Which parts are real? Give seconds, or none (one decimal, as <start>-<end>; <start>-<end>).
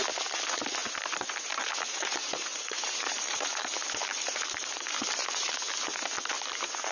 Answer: 0.0-1.5; 5.5-6.9